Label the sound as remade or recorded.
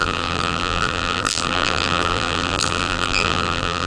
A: remade